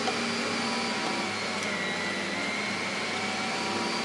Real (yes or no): yes